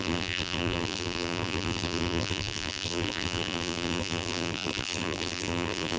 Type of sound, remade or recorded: remade